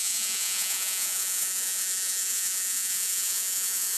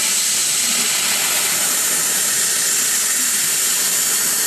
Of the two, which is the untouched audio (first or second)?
second